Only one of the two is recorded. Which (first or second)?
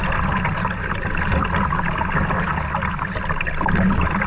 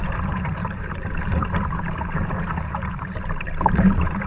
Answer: first